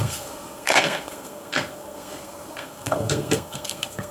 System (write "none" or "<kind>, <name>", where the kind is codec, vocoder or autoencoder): codec, SNAC